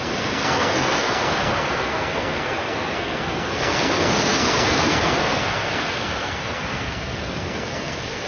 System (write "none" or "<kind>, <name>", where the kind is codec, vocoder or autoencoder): codec, SNAC